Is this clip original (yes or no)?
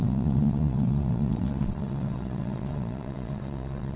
no